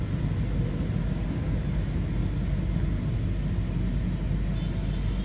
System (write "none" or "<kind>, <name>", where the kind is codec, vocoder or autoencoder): none